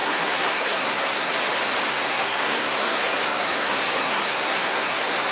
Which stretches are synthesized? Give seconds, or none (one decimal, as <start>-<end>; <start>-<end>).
0.0-1.4; 1.9-5.3

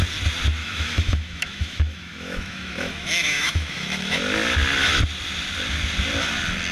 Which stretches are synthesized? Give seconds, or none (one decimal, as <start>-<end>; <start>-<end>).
0.6-4.2

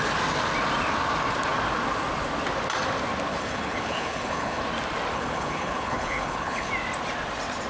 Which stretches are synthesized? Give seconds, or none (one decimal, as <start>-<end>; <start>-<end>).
3.3-4.6; 5.1-6.7

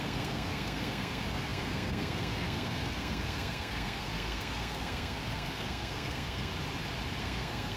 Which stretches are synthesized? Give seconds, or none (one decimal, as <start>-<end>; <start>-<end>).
0.0-6.5; 7.2-7.8

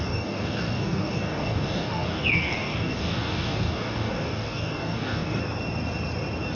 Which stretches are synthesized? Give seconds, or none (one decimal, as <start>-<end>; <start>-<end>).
0.0-5.4

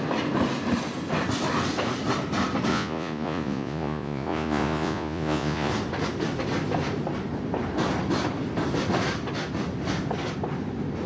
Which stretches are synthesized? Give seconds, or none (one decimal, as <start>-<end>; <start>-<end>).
2.7-5.7

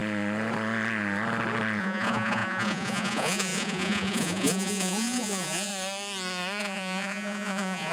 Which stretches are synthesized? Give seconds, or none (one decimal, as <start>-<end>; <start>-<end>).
1.8-5.7; 6.6-7.9

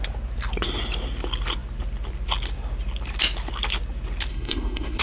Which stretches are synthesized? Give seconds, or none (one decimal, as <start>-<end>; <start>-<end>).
4.3-5.0